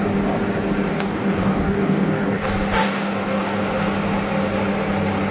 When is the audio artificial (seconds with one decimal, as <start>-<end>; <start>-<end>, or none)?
0.9-2.4; 2.8-3.6